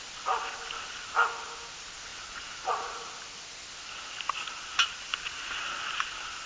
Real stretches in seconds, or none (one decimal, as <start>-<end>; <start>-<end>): 0.0-2.1; 3.1-5.1; 5.9-6.5